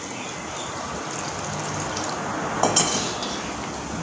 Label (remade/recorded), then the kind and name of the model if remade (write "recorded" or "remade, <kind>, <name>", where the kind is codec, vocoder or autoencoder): recorded